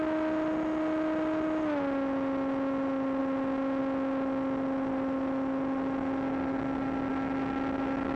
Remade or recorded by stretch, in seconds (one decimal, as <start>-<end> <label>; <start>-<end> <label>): 0.0-8.2 recorded